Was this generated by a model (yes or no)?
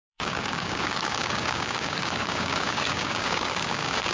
yes